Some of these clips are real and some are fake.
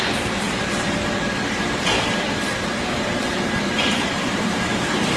fake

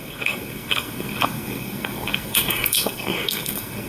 fake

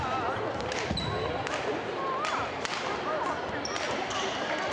real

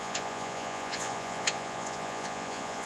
fake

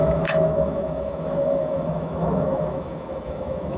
fake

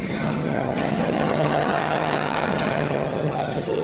fake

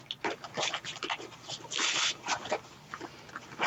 real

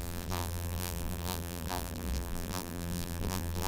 fake